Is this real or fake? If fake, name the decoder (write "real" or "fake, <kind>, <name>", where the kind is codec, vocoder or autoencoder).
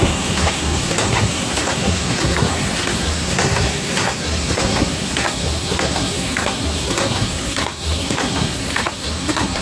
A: fake, codec, SNAC